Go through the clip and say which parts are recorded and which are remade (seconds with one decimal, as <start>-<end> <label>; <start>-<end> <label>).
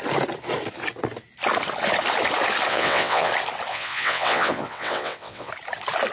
0.0-2.7 recorded; 2.7-3.3 remade; 3.3-3.7 recorded; 3.7-5.5 remade; 5.5-6.1 recorded